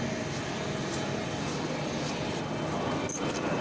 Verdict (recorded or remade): recorded